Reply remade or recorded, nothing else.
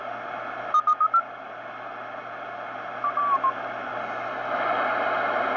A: recorded